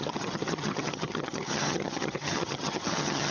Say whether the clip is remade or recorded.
remade